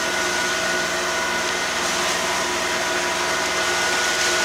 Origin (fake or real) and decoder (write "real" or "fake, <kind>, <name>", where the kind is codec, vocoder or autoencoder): real